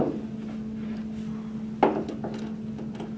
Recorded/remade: recorded